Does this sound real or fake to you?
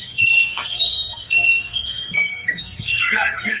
fake